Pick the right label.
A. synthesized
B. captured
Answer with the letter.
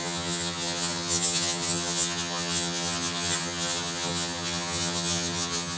A